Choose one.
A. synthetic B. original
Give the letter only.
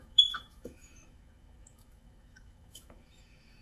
A